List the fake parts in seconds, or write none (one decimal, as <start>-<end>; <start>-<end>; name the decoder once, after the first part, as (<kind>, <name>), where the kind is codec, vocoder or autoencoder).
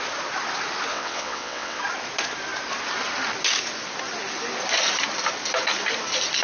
0.9-1.8 (vocoder, WaveNeXt)